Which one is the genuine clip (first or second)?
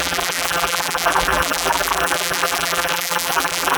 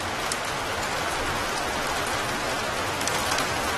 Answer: second